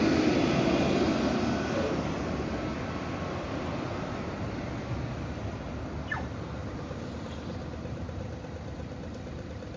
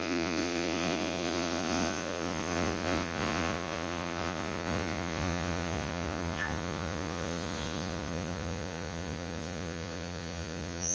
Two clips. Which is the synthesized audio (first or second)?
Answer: second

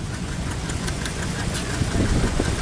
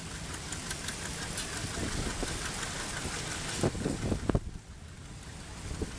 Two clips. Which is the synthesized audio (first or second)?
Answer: first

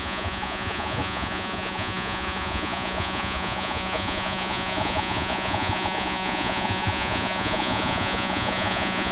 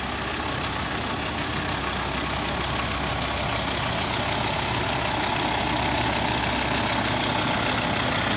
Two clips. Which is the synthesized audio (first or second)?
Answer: first